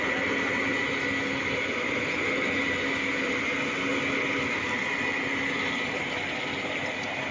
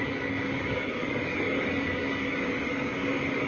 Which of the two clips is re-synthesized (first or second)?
second